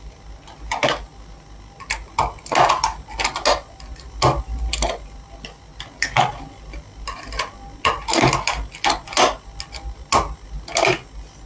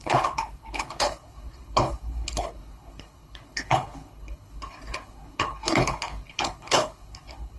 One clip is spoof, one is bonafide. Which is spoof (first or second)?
second